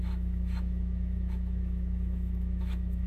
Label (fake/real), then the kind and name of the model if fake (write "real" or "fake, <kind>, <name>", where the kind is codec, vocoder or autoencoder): fake, autoencoder, DAC-VAE